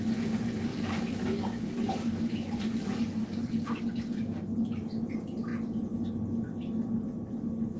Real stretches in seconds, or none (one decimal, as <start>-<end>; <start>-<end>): 0.0-0.7; 2.6-3.2; 3.8-7.8